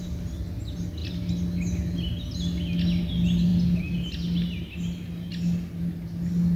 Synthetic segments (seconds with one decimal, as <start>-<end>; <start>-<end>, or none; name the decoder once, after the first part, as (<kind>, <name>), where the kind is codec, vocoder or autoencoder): none